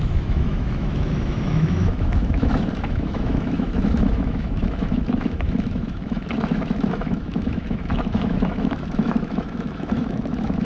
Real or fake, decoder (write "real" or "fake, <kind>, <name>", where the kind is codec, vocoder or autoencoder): fake, autoencoder, DAC-VAE